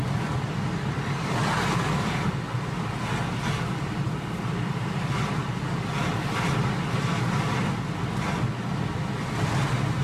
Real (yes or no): yes